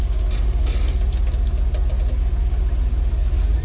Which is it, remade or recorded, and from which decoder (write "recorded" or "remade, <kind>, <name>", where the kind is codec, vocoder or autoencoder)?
recorded